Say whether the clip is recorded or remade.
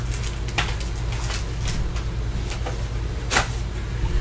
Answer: recorded